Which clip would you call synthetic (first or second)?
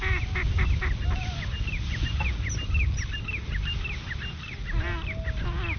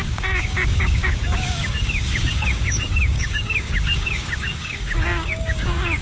second